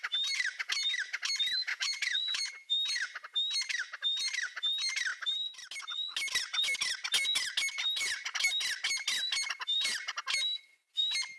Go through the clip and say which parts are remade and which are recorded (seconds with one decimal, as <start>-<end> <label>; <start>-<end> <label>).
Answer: 0.0-1.7 recorded; 1.7-2.5 remade; 2.5-11.4 recorded